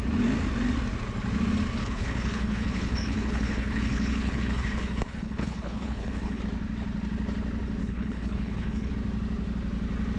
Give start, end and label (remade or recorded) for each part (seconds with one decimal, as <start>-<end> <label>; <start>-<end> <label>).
0.0-1.8 recorded; 1.8-6.4 remade; 6.4-7.8 recorded; 7.8-8.9 remade; 8.9-10.2 recorded